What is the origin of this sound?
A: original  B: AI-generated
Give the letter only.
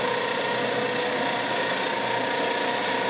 A